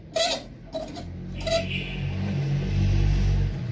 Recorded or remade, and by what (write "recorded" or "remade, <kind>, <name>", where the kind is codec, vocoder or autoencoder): recorded